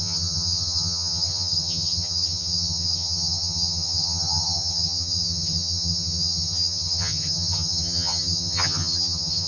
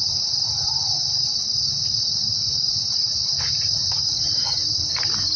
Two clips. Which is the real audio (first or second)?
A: second